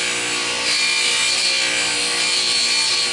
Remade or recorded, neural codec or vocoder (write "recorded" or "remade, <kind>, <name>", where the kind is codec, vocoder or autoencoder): recorded